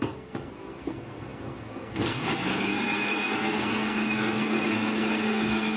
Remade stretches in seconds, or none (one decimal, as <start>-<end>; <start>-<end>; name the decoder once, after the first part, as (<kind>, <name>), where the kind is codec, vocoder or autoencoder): 0.0-5.8 (codec, SNAC)